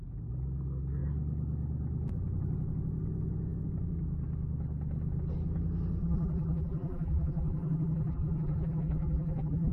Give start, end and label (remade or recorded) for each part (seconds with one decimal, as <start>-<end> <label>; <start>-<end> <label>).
0.0-6.0 recorded; 6.0-9.7 remade